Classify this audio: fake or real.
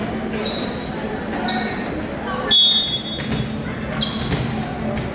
real